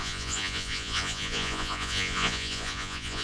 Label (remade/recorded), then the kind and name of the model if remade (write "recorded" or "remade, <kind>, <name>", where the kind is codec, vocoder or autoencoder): remade, vocoder, Vocos